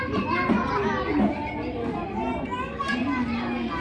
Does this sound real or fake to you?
real